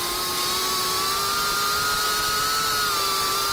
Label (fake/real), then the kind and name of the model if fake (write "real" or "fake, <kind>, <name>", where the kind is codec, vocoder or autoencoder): real